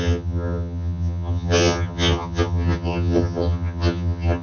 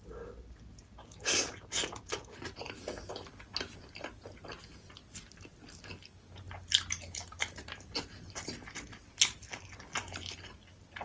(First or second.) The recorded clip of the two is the second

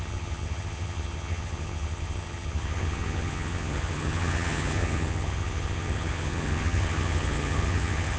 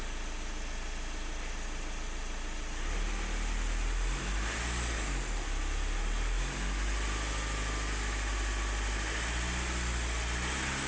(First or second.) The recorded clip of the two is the second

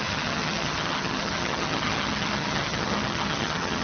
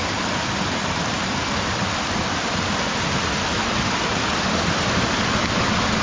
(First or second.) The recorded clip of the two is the second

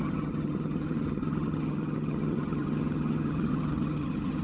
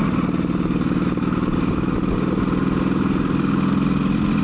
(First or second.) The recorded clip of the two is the second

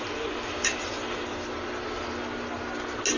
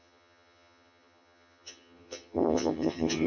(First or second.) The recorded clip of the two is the first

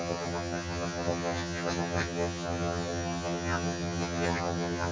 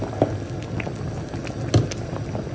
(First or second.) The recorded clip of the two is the second